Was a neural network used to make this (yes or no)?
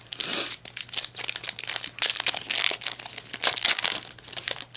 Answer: no